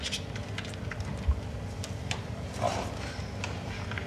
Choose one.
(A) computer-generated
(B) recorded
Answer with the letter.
B